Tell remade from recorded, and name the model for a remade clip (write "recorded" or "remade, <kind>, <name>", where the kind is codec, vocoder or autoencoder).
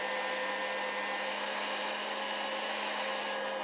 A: recorded